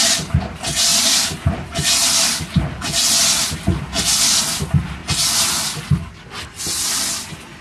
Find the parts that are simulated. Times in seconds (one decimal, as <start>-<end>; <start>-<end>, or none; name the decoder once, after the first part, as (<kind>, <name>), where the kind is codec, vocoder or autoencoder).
none